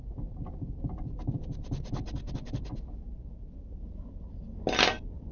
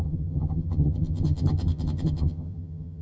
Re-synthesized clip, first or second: second